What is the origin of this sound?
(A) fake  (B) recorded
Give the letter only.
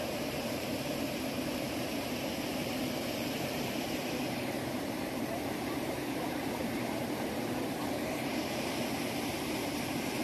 A